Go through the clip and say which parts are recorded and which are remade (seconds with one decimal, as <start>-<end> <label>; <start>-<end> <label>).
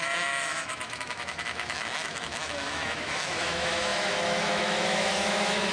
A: 0.0-5.7 remade